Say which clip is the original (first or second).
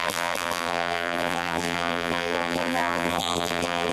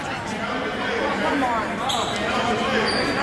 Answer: second